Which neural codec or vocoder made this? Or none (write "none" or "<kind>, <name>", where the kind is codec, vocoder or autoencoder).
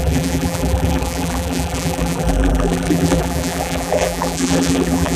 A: vocoder, BigVGAN v2